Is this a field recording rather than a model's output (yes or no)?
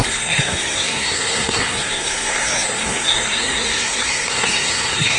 no